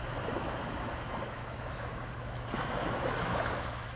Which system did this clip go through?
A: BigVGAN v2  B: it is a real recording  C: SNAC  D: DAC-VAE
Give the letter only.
D